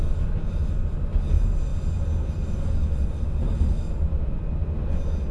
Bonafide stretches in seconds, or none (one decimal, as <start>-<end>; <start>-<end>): 0.0-5.3